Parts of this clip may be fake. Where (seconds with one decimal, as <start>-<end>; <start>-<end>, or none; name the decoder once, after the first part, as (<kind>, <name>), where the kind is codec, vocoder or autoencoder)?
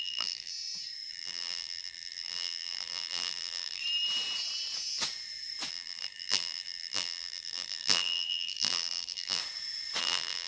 0.0-0.5 (vocoder, BigVGAN v2); 1.1-3.8; 5.7-9.4; 10.0-10.5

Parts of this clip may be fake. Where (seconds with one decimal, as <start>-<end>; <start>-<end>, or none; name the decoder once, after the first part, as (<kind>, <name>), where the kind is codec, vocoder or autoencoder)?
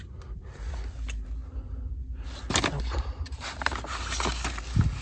none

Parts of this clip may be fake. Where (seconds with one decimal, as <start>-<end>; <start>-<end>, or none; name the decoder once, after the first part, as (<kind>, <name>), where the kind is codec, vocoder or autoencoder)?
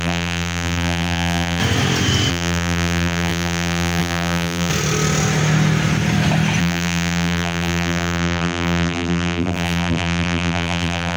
0.0-1.6 (vocoder, BigVGAN v2); 2.3-4.7; 6.6-11.2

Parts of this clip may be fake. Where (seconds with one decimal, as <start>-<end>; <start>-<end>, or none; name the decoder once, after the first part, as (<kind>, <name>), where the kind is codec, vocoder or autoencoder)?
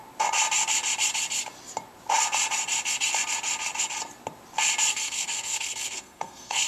4.9-6.7 (codec, SNAC)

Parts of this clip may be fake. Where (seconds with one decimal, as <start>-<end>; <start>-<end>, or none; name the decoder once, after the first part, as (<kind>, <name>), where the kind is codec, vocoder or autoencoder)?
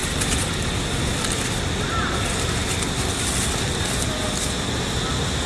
none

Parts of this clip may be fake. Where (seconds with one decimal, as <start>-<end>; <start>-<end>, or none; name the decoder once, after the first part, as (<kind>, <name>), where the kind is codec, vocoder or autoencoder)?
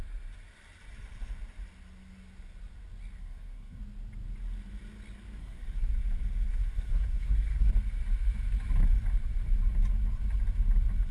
3.2-3.8 (codec, SNAC); 5.4-5.9; 6.5-7.7